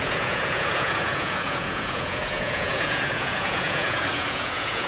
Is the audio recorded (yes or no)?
no